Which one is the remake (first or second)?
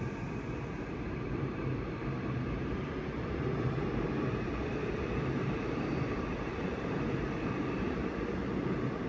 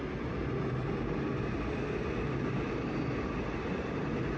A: first